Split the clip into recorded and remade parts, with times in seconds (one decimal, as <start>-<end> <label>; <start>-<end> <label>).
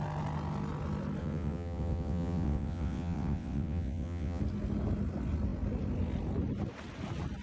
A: 0.0-1.2 recorded; 1.2-4.4 remade; 4.4-7.4 recorded